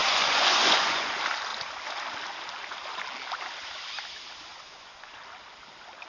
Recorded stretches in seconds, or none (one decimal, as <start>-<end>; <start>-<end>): 1.1-4.5; 5.1-6.1